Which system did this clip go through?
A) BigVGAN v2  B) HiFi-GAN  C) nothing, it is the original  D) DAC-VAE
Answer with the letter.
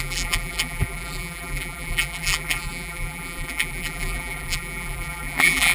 A